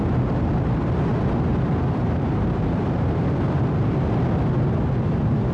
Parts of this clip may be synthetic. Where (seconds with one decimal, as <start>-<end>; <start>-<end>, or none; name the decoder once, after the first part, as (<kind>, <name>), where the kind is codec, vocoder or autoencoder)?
none